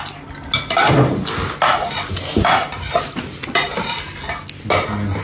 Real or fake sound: real